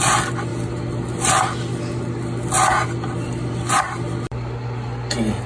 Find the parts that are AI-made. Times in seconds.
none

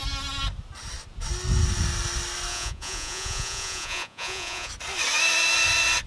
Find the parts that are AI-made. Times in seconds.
2.5-4.7

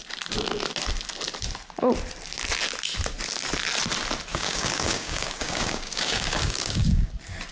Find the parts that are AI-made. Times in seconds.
4.3-7.1

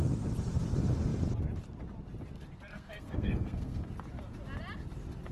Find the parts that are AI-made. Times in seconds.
2.7-3.9

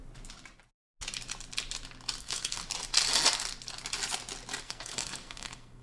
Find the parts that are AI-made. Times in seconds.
2.2-2.6; 4.6-5.8